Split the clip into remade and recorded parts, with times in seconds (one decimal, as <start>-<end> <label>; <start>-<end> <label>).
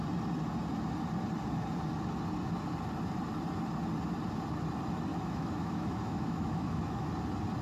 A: 0.0-5.1 recorded; 5.1-7.1 remade; 7.1-7.6 recorded